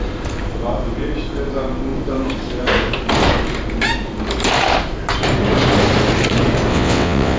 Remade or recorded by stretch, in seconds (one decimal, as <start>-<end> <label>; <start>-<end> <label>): 0.0-6.7 recorded; 6.7-7.4 remade